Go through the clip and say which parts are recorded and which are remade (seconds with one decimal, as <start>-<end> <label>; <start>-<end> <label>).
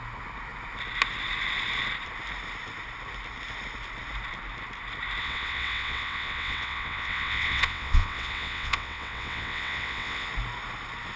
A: 0.0-5.2 recorded; 5.2-10.3 remade; 10.3-11.2 recorded